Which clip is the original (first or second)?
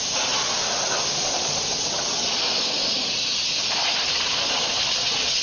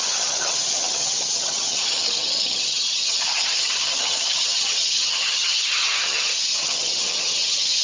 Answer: first